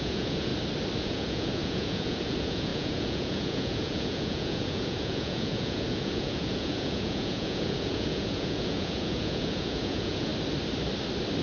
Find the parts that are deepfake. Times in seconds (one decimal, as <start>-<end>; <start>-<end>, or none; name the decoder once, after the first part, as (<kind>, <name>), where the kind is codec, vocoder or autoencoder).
0.0-0.5 (vocoder, Vocos); 1.0-10.3